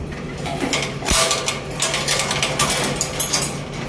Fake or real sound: real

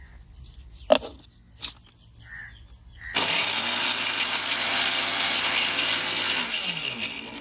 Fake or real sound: real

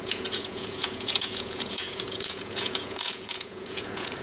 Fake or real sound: fake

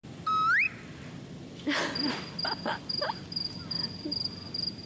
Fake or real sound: real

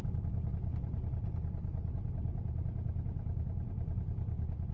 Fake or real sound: real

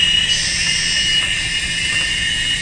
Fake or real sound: real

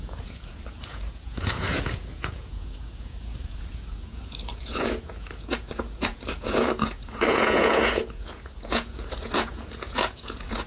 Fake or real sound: fake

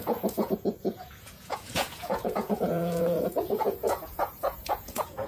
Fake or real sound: fake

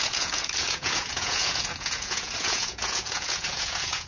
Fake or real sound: fake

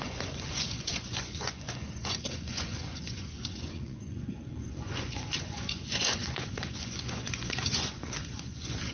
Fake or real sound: fake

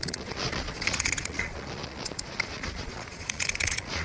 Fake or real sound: fake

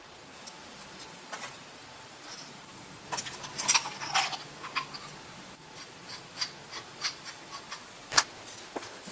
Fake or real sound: real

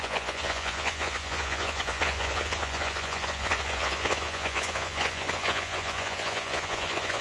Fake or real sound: fake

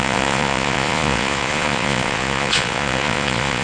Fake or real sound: fake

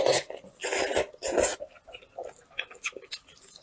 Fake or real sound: real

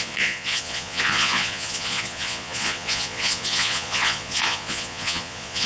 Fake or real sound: fake